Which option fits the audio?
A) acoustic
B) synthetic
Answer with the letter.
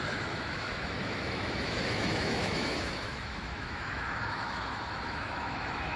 B